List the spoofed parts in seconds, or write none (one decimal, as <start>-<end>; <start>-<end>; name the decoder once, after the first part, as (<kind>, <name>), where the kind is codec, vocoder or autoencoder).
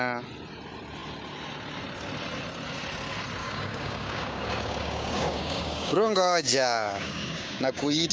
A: 3.4-8.1 (codec, DAC)